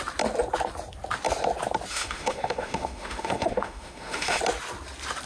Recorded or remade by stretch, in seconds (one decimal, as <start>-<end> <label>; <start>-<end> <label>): 0.0-1.9 recorded; 1.9-4.4 remade; 4.4-5.3 recorded